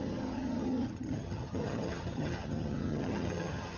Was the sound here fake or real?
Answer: fake